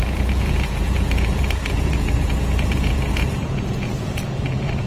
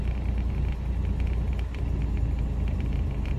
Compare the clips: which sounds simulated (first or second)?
first